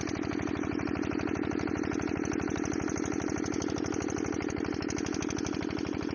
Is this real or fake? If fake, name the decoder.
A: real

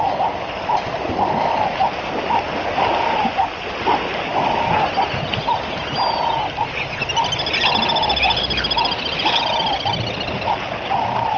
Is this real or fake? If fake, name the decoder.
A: real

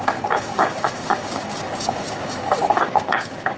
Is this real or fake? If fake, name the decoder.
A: fake, codec, DAC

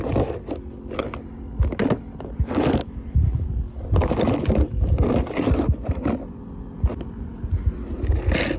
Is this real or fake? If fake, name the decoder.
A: real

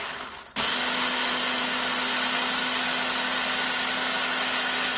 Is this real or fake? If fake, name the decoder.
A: real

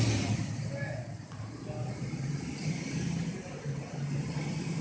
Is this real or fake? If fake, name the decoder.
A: real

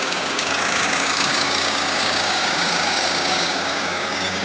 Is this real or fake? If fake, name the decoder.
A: fake, codec, DAC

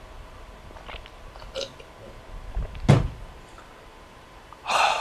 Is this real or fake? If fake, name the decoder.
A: real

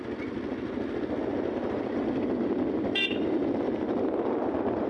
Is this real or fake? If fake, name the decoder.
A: real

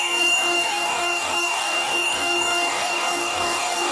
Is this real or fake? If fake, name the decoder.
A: fake, codec, DAC